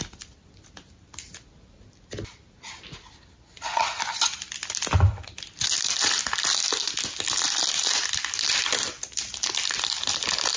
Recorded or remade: recorded